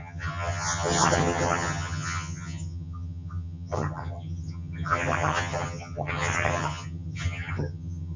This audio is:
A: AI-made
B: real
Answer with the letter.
A